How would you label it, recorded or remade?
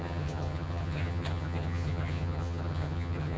remade